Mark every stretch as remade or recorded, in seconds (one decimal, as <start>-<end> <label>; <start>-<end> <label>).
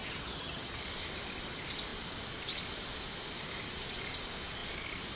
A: 0.0-0.8 remade; 0.8-5.2 recorded